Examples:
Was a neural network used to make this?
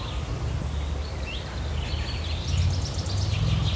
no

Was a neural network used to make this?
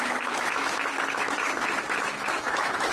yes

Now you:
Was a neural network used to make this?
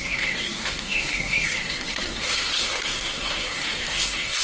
yes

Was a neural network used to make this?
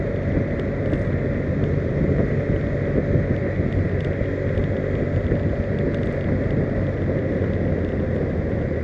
no